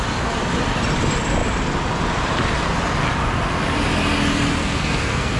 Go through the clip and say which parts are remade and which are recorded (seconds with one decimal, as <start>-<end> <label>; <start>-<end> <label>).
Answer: 0.0-4.6 recorded; 4.6-5.4 remade